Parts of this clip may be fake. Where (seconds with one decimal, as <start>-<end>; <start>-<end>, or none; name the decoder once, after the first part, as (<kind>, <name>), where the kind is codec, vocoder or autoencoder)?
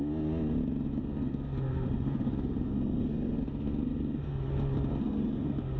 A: 1.0-4.5 (codec, SNAC); 4.9-5.8